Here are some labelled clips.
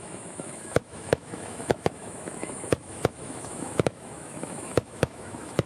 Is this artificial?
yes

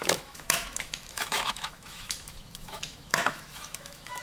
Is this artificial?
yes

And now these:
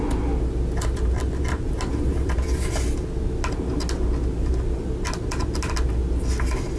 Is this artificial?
no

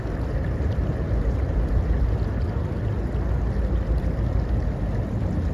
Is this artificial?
no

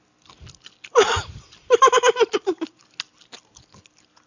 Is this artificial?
no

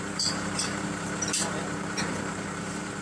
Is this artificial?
yes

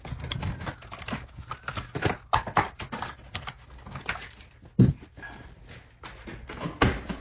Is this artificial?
no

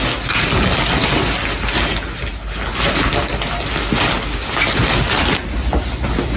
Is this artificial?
no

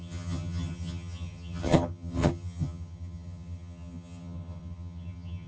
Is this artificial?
yes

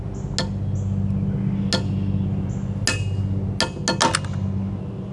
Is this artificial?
no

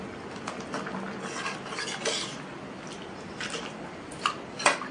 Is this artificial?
no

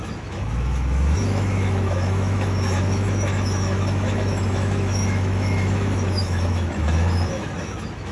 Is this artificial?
yes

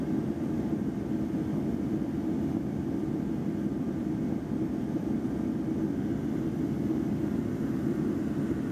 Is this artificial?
no